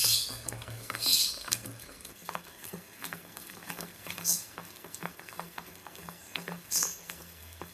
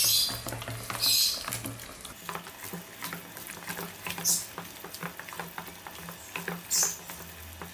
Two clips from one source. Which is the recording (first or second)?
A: second